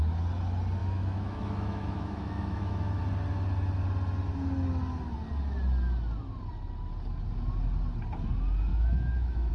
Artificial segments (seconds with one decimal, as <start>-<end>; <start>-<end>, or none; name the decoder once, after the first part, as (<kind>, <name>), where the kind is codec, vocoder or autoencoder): 0.8-3.0 (autoencoder, DAC-VAE); 8.7-9.5

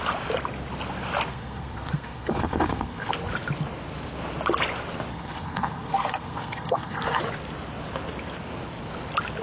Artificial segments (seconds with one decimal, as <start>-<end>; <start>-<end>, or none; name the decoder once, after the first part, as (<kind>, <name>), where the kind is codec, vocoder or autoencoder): 1.3-3.1 (codec, SNAC); 5.1-7.2